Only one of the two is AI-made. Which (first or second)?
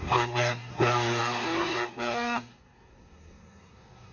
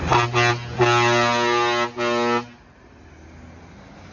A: first